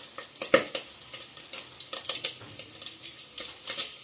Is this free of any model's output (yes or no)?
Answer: yes